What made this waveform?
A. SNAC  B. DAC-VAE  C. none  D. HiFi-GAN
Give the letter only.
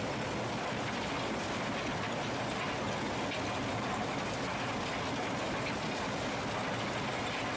C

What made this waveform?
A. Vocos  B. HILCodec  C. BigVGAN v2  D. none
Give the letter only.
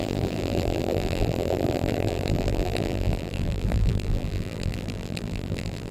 C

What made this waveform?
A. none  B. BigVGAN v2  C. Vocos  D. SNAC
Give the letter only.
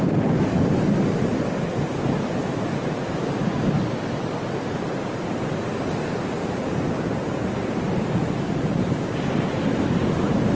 A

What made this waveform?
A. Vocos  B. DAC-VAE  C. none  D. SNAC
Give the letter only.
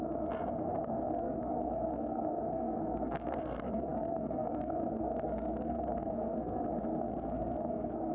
D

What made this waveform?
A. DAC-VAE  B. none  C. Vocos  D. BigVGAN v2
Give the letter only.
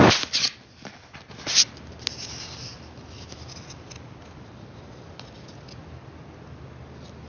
B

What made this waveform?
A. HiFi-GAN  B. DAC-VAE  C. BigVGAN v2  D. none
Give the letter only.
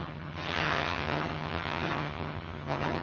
A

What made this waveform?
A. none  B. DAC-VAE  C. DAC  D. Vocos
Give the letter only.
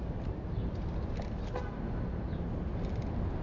A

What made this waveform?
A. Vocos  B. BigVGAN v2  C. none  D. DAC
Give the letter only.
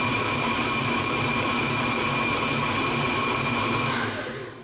B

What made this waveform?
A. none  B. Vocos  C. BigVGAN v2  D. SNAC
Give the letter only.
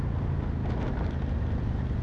A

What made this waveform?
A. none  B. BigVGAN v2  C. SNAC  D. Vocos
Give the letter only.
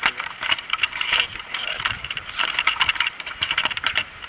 B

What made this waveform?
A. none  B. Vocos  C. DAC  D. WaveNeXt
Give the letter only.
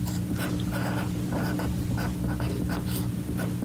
A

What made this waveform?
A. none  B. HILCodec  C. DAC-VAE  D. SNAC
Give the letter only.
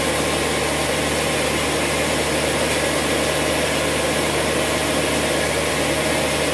A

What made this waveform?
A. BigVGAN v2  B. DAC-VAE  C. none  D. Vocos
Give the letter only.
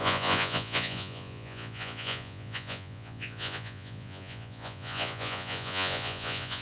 D